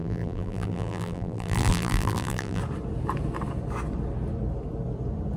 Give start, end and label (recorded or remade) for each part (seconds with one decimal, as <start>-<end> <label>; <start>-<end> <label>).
0.0-2.6 remade; 2.6-5.4 recorded